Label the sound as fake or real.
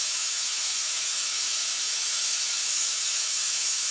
fake